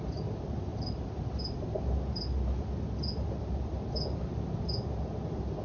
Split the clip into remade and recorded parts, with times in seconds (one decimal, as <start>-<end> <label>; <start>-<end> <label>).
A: 0.0-5.6 recorded